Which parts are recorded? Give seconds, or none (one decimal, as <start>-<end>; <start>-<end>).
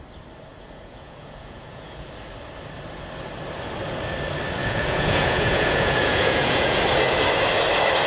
0.0-0.5; 2.1-4.6; 6.8-8.1